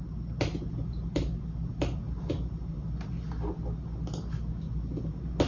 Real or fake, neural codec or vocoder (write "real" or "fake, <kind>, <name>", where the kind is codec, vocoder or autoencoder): real